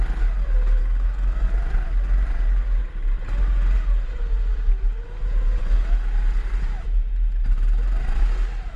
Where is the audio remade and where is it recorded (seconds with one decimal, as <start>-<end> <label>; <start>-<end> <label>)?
0.0-0.8 recorded; 0.8-1.5 remade; 1.5-8.8 recorded